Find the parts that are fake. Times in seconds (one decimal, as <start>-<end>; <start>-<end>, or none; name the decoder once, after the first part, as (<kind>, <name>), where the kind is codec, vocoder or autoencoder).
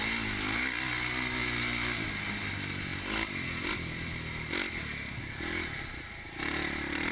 none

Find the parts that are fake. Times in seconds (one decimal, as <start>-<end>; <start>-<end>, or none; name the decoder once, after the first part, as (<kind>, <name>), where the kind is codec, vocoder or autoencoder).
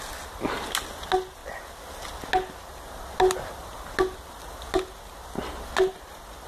none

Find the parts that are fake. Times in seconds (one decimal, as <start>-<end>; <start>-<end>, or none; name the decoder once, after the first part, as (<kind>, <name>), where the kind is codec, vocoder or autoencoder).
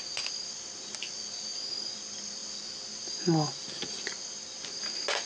none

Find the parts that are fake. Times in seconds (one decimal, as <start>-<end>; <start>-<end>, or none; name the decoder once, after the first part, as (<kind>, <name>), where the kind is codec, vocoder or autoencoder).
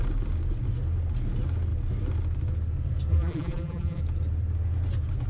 3.1-4.0 (vocoder, BigVGAN v2)